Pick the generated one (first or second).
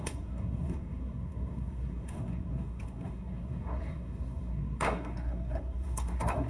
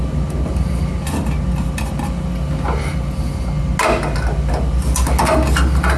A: first